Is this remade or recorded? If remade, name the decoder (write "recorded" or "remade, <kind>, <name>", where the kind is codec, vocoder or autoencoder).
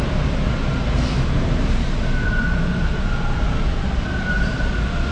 recorded